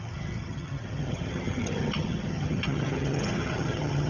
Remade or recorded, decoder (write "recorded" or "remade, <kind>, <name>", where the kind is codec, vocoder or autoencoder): remade, vocoder, HiFi-GAN